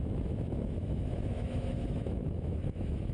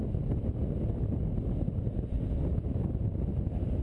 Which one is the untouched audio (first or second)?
second